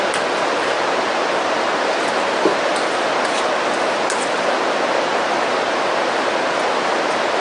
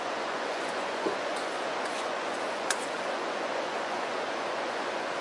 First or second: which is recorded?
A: first